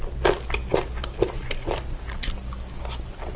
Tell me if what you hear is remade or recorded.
recorded